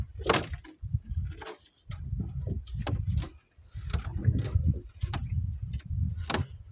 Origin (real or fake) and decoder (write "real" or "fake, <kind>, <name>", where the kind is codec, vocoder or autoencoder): real